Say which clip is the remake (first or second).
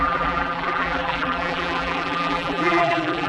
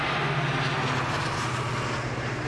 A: first